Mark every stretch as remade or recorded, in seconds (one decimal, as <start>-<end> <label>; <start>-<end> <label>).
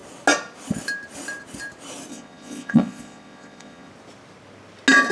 0.0-2.1 recorded; 2.1-3.9 remade; 3.9-5.1 recorded